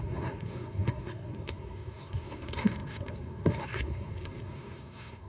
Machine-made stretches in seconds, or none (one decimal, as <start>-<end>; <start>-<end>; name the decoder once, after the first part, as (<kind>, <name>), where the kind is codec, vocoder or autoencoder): 0.0-5.3 (codec, SNAC)